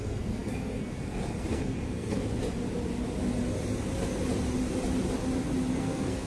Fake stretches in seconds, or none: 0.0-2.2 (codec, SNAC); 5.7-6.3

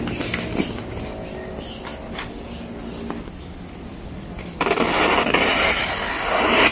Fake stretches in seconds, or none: 0.0-1.9 (vocoder, BigVGAN v2); 5.5-6.7

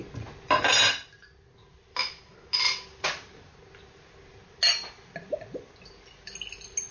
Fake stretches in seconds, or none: none

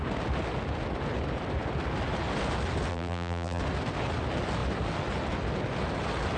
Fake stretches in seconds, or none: 2.9-3.6 (vocoder, BigVGAN v2)

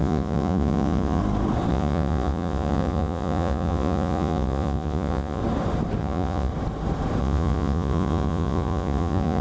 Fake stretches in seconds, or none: 0.0-1.2 (vocoder, Vocos); 1.7-5.4; 6.0-6.5; 7.2-9.4

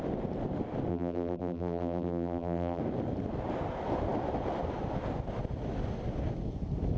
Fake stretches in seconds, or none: 0.9-2.8 (vocoder, BigVGAN v2)